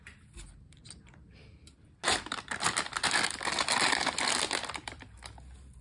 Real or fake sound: real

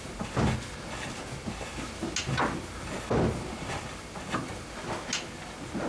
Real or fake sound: real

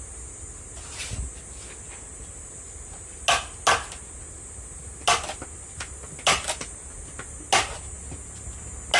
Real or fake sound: real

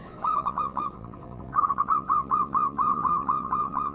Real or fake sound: fake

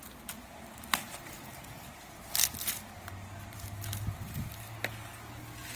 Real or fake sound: real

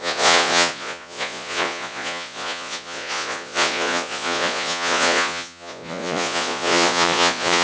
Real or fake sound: fake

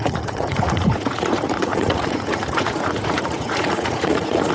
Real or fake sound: fake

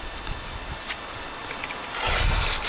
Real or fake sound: real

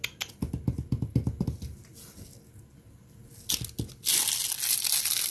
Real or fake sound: real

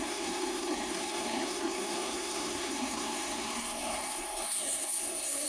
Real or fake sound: fake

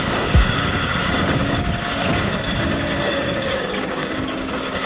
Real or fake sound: fake